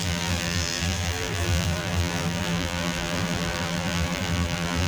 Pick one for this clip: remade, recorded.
remade